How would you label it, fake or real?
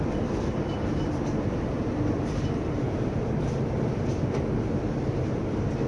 real